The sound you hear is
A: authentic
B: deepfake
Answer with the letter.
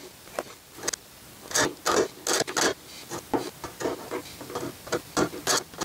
A